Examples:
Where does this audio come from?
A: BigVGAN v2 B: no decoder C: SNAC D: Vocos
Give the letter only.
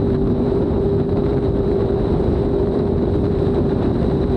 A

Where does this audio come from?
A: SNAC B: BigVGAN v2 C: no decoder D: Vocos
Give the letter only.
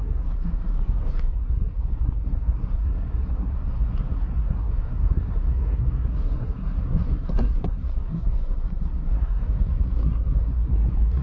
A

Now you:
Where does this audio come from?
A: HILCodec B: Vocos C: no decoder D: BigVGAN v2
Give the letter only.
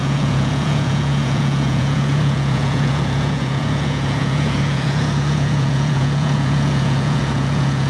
B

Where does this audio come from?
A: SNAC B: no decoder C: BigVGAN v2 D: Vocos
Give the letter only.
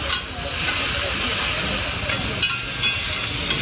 B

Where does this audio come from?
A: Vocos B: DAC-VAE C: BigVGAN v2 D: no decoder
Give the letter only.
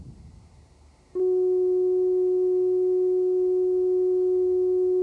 D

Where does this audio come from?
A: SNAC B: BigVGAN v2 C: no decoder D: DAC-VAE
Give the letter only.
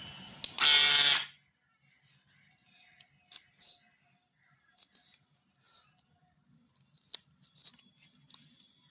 C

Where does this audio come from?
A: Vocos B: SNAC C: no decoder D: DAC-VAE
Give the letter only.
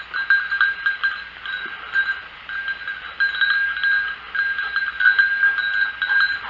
C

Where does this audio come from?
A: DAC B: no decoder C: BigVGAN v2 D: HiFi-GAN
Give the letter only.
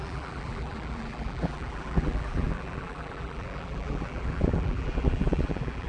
C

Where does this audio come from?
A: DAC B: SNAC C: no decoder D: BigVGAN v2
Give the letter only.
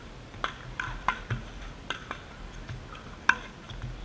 C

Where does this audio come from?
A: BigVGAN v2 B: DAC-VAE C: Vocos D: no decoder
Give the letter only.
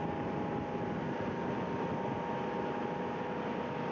D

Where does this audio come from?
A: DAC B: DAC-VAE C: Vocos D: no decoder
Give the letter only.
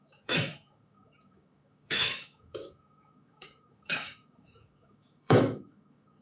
B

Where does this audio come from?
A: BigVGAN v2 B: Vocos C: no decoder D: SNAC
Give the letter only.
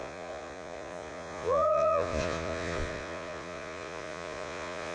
B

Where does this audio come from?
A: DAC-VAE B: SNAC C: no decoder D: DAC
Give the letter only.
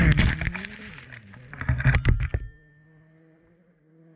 C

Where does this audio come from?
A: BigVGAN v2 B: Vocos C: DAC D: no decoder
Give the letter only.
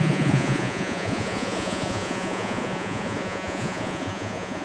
B